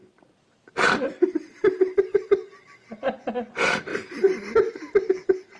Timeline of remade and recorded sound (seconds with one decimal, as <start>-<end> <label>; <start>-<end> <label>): 0.0-1.3 remade; 1.3-3.9 recorded; 3.9-5.1 remade; 5.1-5.6 recorded